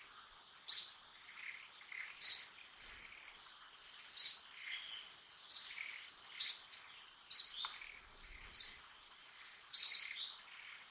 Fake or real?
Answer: fake